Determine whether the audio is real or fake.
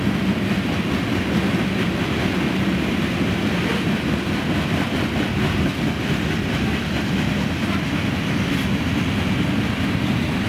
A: real